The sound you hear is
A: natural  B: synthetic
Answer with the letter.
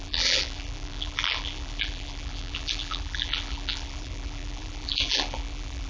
B